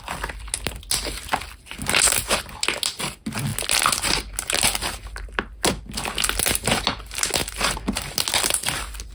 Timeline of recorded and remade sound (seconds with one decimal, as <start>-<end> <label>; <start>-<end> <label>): 0.0-9.1 recorded